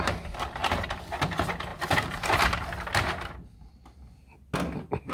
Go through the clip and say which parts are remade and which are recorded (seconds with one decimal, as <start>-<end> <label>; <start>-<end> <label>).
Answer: 0.0-0.6 recorded; 0.6-1.1 remade; 1.1-1.7 recorded; 1.7-2.8 remade; 2.8-5.1 recorded